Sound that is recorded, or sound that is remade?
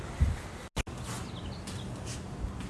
recorded